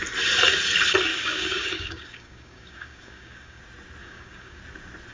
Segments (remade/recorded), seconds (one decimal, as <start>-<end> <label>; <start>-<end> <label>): 0.0-1.1 recorded; 1.1-3.6 remade; 3.6-4.0 recorded; 4.0-4.6 remade; 4.6-5.1 recorded